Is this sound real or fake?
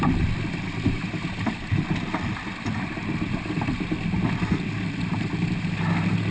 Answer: real